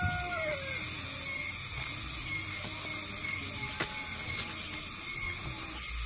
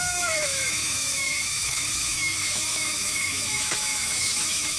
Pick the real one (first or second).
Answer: first